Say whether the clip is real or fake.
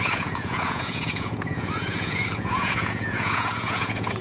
fake